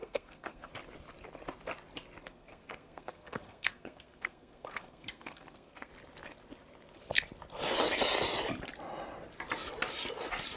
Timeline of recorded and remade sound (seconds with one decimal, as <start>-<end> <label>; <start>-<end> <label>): 0.0-0.7 remade; 0.7-2.2 recorded; 2.2-5.9 remade; 5.9-10.6 recorded